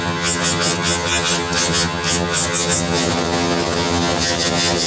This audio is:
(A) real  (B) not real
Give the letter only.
B